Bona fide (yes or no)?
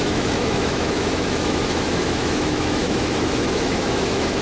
no